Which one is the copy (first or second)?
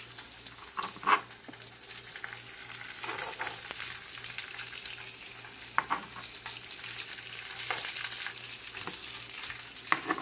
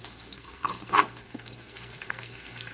second